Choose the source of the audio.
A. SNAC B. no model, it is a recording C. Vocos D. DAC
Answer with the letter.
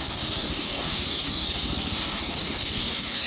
D